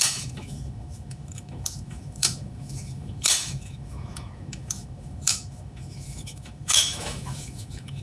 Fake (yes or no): yes